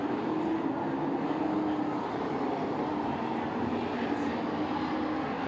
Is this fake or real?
real